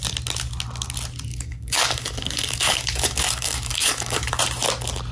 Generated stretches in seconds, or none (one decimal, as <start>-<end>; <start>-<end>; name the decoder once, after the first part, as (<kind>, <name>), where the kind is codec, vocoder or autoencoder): 1.3-4.4 (codec, DAC)